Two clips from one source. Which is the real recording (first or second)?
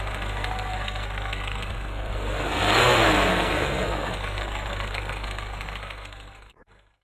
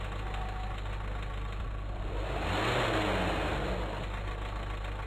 second